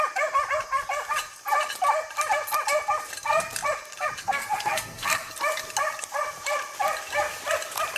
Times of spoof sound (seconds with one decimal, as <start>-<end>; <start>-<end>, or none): 4.2-5.3